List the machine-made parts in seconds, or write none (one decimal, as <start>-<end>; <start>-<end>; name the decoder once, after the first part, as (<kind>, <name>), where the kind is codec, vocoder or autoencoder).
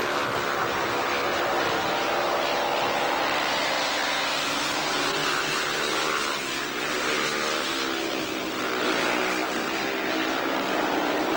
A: none